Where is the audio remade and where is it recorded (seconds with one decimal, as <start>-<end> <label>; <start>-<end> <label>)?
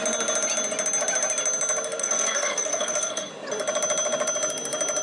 0.0-2.0 recorded; 2.0-3.3 remade; 3.3-5.0 recorded